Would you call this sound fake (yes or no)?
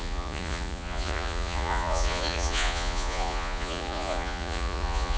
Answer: yes